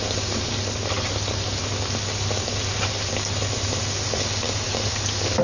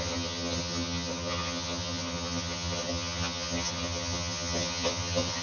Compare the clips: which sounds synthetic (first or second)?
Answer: second